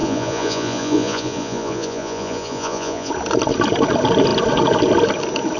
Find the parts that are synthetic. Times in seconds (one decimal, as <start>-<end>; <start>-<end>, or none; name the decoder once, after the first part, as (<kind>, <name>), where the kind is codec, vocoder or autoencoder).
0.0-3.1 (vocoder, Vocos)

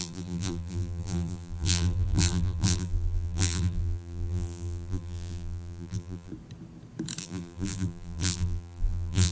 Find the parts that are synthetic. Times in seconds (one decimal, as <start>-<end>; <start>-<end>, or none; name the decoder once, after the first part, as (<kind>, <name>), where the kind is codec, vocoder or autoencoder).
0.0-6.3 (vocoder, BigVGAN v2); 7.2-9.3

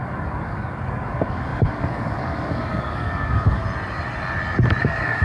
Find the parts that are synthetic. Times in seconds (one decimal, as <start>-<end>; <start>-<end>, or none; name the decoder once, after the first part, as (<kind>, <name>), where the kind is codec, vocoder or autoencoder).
0.0-3.6 (codec, DAC); 4.8-5.2

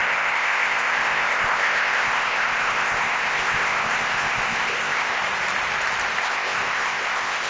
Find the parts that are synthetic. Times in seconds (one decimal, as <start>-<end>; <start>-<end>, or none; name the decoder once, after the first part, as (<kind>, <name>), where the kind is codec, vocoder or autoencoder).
0.0-5.2 (codec, ZipCodec); 6.2-7.5

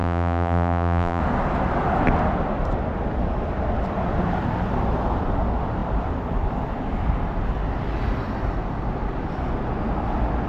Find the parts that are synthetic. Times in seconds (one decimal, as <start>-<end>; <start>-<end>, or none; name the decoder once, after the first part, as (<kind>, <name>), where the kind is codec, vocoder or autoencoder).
0.0-1.2 (vocoder, BigVGAN v2)

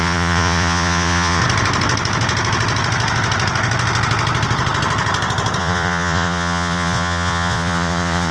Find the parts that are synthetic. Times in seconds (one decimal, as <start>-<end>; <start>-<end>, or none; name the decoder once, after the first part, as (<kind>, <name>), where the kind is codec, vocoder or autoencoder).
0.0-1.4 (vocoder, Vocos); 5.6-8.3

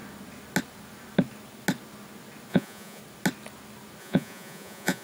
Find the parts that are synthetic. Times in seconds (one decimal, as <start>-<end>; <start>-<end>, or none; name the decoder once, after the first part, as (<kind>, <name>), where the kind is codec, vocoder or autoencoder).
2.5-3.0 (vocoder, Vocos); 4.0-5.0

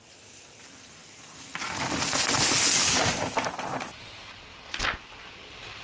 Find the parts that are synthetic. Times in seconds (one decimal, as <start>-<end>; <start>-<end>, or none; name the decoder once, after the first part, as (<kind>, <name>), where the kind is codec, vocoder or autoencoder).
none